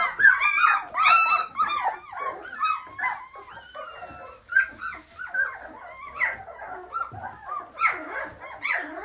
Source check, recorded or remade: recorded